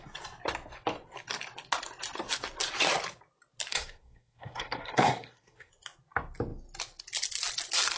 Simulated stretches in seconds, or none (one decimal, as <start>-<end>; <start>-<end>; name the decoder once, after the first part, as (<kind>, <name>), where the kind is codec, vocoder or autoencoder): 3.7-5.7 (codec, SNAC)